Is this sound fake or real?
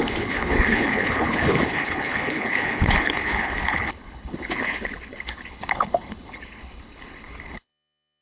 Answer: fake